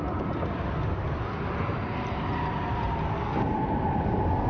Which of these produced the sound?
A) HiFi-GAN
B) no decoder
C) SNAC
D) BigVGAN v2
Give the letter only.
B